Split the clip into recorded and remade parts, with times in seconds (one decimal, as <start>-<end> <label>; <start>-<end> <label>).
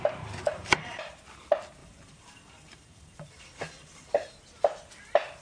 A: 0.0-0.5 recorded; 0.5-1.2 remade; 1.2-1.8 recorded; 1.8-4.3 remade; 4.3-5.4 recorded